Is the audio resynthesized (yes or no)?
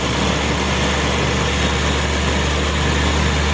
no